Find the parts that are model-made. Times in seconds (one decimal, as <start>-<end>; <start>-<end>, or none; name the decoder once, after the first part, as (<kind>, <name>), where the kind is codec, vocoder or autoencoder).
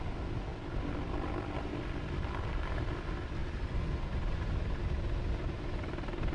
none